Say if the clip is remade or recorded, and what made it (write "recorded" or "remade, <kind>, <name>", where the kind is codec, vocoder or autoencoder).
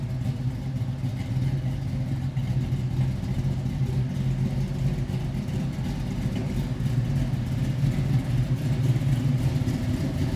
recorded